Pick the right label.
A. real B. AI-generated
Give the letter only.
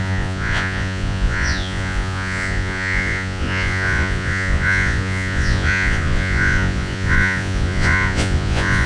B